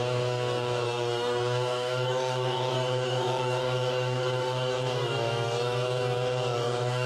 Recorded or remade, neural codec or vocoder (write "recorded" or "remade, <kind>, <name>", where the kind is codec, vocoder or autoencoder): remade, codec, DAC